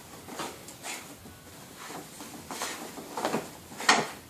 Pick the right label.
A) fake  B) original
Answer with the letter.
B